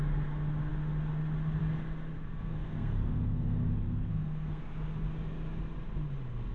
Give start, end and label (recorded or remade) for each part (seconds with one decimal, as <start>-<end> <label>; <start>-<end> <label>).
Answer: 0.0-2.1 recorded; 2.1-4.6 remade; 4.6-6.5 recorded